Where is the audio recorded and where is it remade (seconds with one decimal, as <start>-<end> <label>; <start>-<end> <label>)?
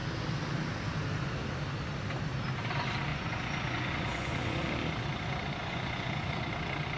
0.0-3.1 recorded; 3.1-4.7 remade; 4.7-5.6 recorded; 5.6-6.5 remade; 6.5-7.0 recorded